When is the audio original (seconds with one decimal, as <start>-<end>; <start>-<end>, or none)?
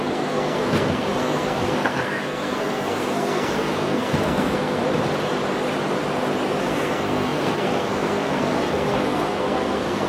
4.8-6.6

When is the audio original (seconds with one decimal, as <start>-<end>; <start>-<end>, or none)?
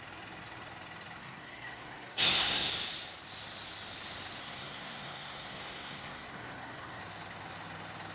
0.0-1.2; 2.7-4.4; 7.0-8.1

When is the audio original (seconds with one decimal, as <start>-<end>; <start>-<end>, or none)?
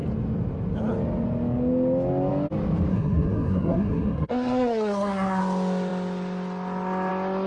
0.0-2.9; 5.4-7.5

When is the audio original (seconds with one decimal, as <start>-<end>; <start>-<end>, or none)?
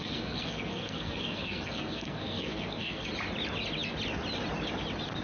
3.1-5.2